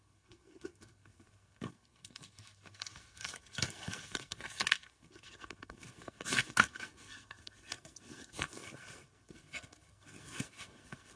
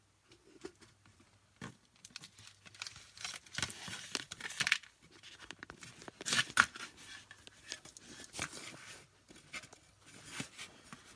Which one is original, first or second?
second